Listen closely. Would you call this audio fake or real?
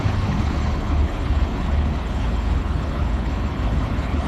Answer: fake